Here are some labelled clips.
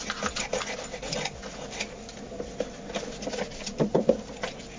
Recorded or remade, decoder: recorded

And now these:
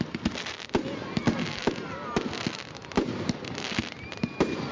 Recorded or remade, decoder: recorded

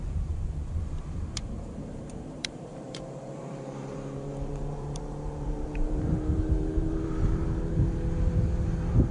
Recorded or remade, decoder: remade, vocoder, BigVGAN v2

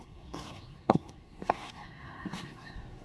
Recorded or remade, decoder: remade, codec, SNAC